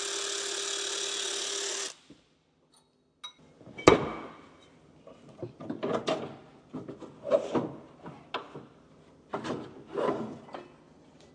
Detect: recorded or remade recorded